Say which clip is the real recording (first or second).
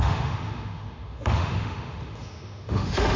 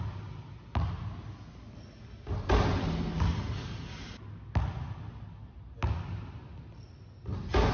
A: second